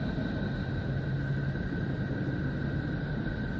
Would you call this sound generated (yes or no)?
no